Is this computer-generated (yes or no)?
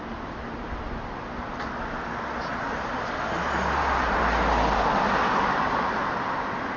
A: no